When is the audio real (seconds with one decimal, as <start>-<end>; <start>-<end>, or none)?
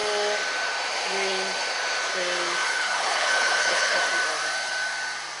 0.0-2.6; 4.0-5.4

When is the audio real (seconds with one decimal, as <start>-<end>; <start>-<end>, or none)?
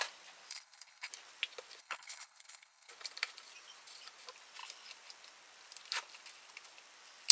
0.0-0.5; 1.1-1.8; 2.9-7.3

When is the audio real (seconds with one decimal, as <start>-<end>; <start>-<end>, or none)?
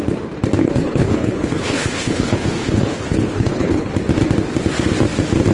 0.0-0.6; 3.9-5.5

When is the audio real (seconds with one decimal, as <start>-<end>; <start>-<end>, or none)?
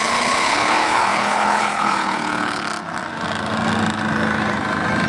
2.7-5.1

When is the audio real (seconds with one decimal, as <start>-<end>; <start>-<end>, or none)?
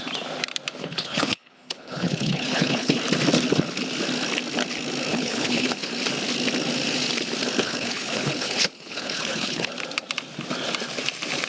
0.0-0.8; 3.0-5.1; 5.9-7.6; 9.7-11.5